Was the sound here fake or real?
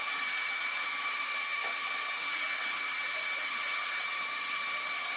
fake